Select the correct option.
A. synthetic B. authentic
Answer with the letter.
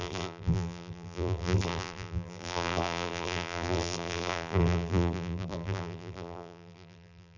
A